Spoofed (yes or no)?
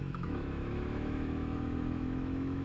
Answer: yes